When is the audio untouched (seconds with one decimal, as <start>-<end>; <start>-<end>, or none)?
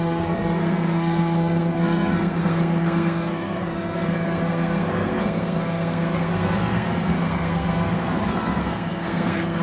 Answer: none